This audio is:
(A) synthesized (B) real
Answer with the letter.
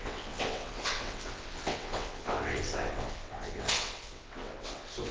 A